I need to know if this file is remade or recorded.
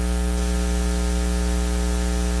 recorded